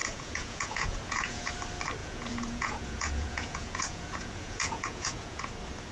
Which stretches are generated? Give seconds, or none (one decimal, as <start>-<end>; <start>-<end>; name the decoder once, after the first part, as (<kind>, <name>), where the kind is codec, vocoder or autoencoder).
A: 0.0-1.5 (vocoder, Vocos); 2.0-5.5